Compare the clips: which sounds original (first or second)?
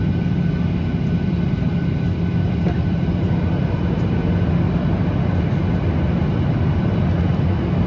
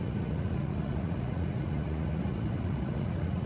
first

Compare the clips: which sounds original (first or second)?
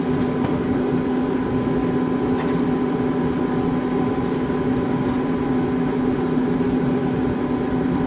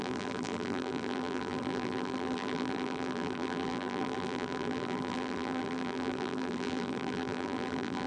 first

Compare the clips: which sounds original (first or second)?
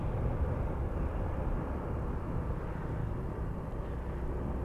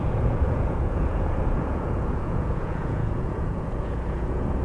first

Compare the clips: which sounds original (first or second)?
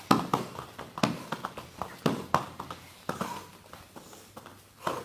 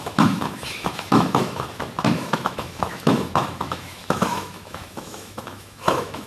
first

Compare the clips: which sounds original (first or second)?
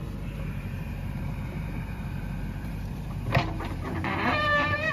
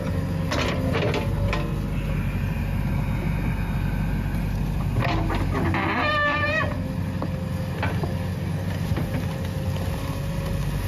second